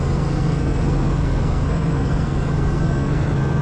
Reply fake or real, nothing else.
fake